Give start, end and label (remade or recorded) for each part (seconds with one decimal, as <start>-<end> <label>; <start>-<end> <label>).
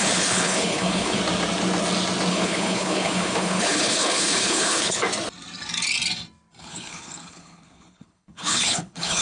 0.0-1.2 remade; 1.2-2.3 recorded; 2.3-5.0 remade; 5.0-6.6 recorded; 6.6-9.2 remade